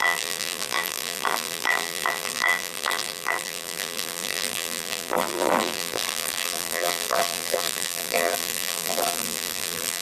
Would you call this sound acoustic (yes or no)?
no